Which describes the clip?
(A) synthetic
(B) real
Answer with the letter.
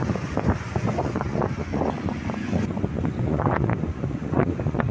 A